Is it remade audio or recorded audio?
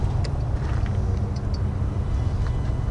recorded